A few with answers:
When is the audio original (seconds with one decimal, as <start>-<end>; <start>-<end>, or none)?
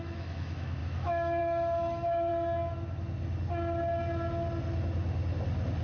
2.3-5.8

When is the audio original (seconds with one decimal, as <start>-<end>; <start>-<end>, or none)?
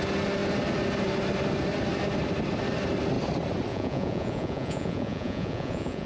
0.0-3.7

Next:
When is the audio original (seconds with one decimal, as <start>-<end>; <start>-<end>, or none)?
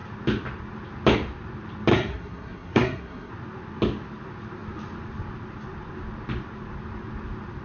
0.0-1.9; 3.3-7.6